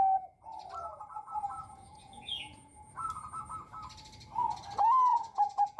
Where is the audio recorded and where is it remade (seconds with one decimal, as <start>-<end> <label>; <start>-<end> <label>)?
0.0-0.9 recorded; 0.9-2.9 remade; 2.9-5.1 recorded; 5.1-5.8 remade